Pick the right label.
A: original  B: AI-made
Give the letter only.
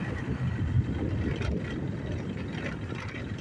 A